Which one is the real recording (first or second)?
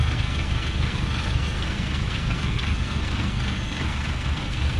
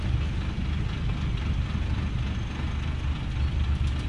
second